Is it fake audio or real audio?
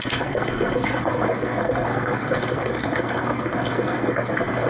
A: fake